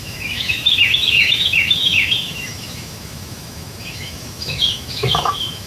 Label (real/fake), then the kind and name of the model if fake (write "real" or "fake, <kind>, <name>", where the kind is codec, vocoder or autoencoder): fake, autoencoder, DAC-VAE